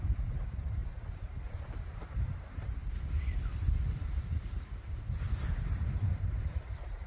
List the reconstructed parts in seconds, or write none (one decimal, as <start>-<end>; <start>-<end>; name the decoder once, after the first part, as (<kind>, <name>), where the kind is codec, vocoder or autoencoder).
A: 0.0-2.8 (vocoder, BigVGAN v2); 4.1-4.8; 5.6-7.1